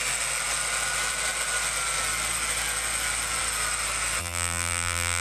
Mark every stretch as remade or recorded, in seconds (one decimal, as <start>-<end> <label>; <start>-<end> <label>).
0.0-4.2 recorded; 4.2-5.2 remade